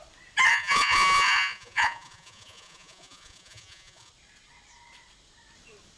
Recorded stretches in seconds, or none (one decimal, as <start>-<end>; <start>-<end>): 0.0-0.5; 4.1-6.0